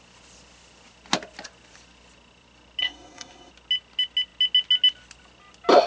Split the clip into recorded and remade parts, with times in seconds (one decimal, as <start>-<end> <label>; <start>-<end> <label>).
0.0-2.8 recorded; 2.8-3.5 remade; 3.5-5.9 recorded